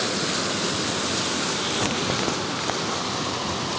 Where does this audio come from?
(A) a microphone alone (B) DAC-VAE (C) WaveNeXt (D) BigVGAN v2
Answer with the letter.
A